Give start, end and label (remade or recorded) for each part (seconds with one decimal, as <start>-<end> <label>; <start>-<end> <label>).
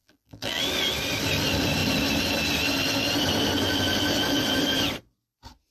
0.0-0.6 remade; 0.6-5.7 recorded